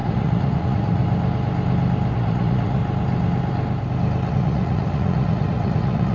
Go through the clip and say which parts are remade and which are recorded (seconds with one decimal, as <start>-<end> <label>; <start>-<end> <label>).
0.0-1.0 remade; 1.0-2.1 recorded; 2.1-2.8 remade; 2.8-4.3 recorded; 4.3-6.1 remade